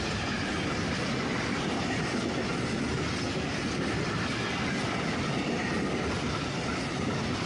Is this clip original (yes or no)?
yes